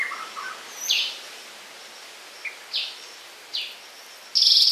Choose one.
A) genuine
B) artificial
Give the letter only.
A